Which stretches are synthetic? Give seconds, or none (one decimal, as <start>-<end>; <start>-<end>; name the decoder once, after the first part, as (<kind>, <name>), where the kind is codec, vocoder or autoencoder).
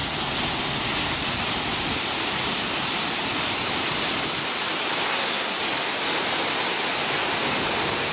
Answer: 5.1-5.6 (codec, SNAC)